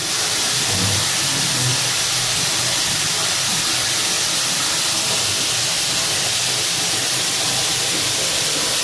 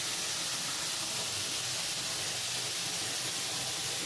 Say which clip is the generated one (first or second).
first